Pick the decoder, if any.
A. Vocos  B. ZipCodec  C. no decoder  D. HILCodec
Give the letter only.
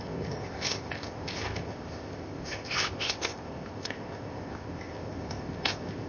B